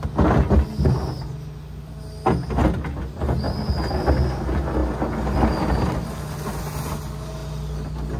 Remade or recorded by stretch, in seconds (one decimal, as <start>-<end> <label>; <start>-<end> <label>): 0.0-8.2 recorded